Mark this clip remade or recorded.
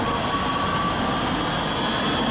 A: recorded